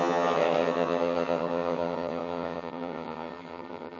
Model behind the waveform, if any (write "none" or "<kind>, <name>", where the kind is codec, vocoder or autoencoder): vocoder, HiFi-GAN